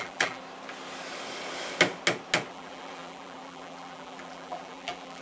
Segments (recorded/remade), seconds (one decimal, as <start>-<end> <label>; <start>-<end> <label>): 0.0-0.4 remade; 0.4-2.5 recorded; 2.5-5.2 remade